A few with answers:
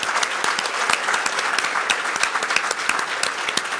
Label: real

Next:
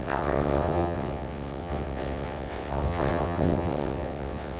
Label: fake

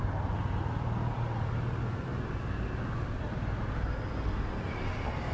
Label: real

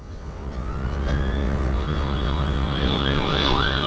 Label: fake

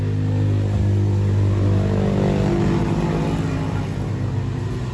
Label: real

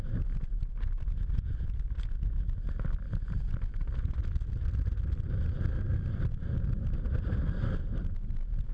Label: real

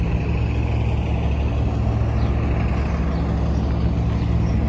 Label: real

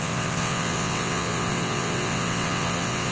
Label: fake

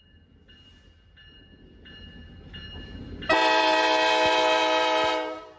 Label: real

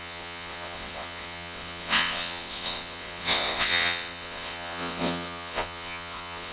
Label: fake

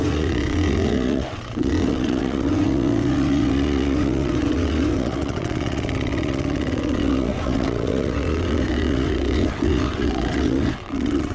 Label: fake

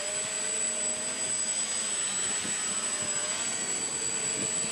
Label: real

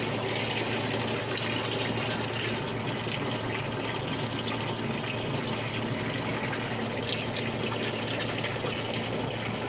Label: real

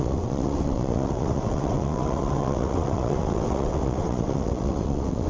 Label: fake